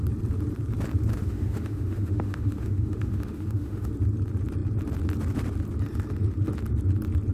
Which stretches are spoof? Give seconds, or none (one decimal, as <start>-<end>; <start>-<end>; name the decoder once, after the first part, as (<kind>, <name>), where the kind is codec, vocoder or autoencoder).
1.1-3.9 (autoencoder, DAC-VAE)